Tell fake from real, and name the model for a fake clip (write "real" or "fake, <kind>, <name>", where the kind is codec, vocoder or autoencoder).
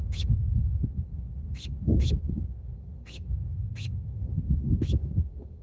fake, autoencoder, DAC-VAE